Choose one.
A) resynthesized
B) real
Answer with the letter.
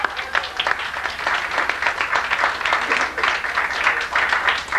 B